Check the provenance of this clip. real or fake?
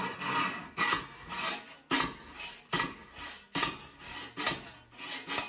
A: real